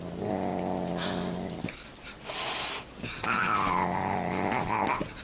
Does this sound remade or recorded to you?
recorded